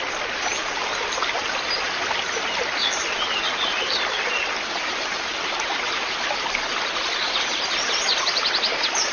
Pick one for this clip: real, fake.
real